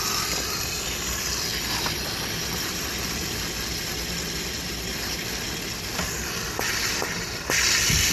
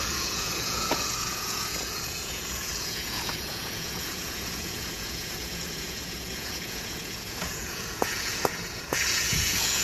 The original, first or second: first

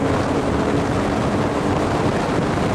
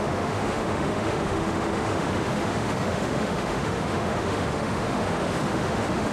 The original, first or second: first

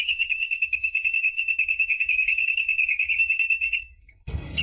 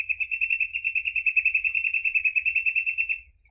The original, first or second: second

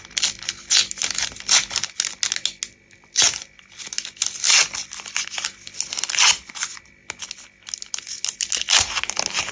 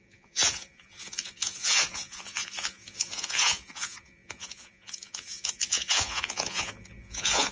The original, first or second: first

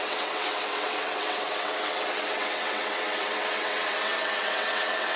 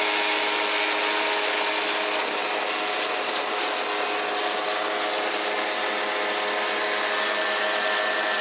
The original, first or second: second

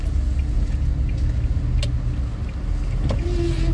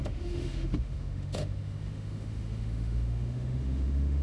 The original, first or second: first